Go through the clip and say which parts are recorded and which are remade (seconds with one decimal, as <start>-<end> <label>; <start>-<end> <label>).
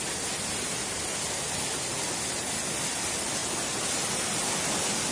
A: 0.0-5.1 recorded